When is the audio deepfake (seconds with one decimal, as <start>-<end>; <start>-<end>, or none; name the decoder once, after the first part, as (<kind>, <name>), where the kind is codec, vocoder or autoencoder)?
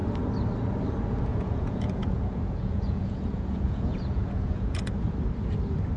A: 1.3-4.9 (vocoder, Vocos)